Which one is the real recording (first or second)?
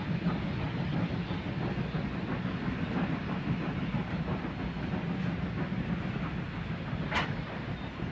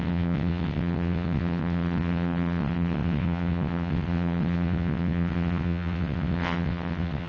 first